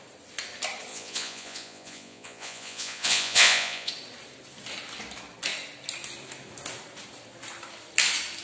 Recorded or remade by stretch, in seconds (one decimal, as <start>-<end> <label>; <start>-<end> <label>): 0.0-0.9 recorded; 0.9-3.9 remade; 3.9-8.4 recorded